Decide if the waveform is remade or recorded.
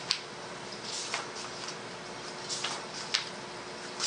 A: recorded